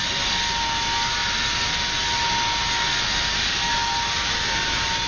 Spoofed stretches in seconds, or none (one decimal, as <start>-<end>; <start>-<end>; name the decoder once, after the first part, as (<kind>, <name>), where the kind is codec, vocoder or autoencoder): none